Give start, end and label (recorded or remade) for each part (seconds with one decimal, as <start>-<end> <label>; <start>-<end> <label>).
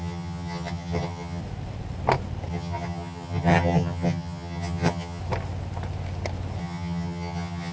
0.0-1.4 remade; 1.4-2.5 recorded; 2.5-5.2 remade; 5.2-6.6 recorded; 6.6-7.7 remade